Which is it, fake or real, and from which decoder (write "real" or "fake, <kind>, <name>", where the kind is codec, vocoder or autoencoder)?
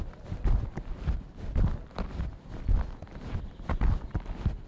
real